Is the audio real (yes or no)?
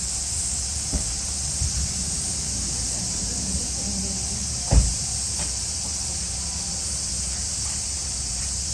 no